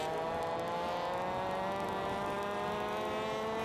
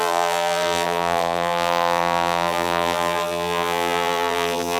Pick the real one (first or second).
first